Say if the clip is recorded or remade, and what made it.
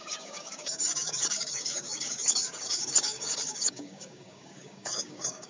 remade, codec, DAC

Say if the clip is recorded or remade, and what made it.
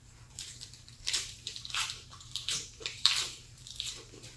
remade, vocoder, BigVGAN v2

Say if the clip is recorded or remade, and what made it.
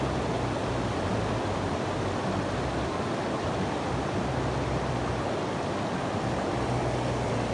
recorded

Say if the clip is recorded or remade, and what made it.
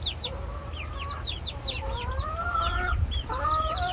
recorded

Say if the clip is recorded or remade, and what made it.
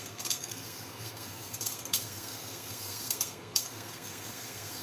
remade, codec, SNAC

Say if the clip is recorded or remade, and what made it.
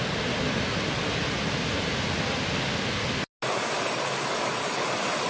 recorded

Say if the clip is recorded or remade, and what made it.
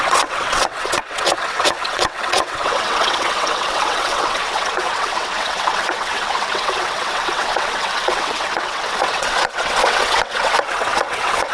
remade, vocoder, WaveNeXt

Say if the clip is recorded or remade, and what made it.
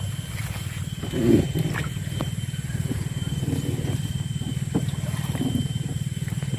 recorded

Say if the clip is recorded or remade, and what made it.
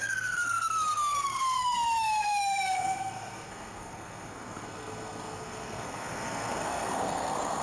remade, codec, SNAC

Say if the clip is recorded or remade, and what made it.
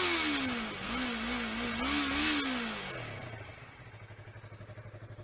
recorded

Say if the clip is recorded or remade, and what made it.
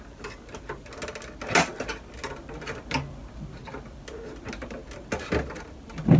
recorded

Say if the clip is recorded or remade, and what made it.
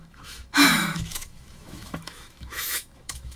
remade, autoencoder, DAC-VAE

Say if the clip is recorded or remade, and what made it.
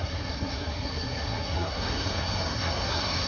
remade, codec, SNAC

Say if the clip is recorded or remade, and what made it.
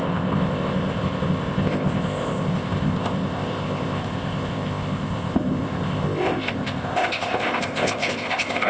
remade, codec, ZipCodec